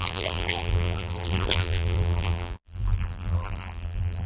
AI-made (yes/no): yes